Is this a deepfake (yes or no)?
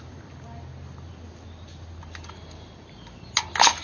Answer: no